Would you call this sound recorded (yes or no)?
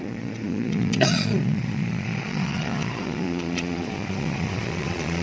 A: no